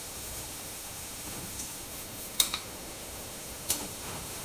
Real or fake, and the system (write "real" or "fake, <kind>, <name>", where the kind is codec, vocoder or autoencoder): fake, autoencoder, DAC-VAE